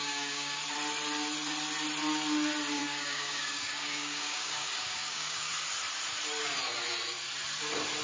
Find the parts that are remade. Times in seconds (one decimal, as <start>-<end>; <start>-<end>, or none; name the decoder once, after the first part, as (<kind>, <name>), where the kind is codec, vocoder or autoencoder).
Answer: 0.0-0.6 (codec, DAC); 2.8-5.5

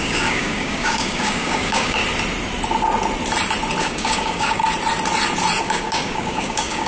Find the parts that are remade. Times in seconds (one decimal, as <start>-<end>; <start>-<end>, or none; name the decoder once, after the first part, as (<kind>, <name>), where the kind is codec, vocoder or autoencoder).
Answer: 0.0-2.0 (codec, DAC); 3.8-4.6; 5.6-6.9

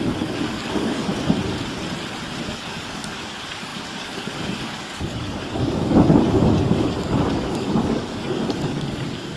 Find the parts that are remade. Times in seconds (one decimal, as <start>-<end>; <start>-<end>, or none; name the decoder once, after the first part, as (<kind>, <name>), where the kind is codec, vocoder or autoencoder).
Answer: 0.0-1.1 (codec, DAC); 2.5-9.4

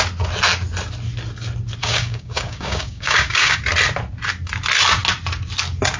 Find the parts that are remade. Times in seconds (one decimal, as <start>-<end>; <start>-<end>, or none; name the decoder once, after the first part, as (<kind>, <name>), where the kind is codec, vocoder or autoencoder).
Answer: 1.8-3.6 (codec, DAC)

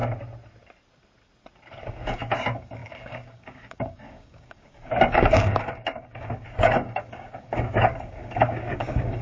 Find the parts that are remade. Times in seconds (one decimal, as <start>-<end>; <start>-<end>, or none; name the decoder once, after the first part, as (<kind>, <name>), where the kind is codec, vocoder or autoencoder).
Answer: 1.9-9.2 (codec, DAC)